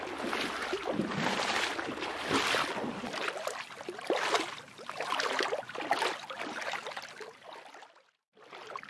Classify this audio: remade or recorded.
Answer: recorded